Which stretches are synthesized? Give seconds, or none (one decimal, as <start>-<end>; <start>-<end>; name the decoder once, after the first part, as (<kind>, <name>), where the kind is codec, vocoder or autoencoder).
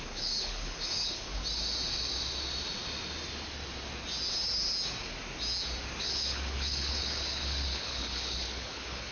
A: 0.0-1.4 (codec, HILCodec); 6.0-9.1